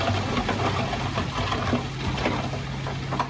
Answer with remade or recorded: recorded